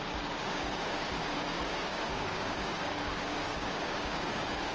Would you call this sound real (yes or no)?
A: no